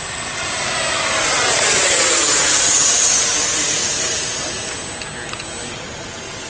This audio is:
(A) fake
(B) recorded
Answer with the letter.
B